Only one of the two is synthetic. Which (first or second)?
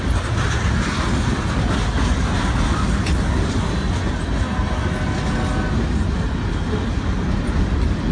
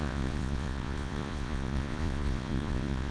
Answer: second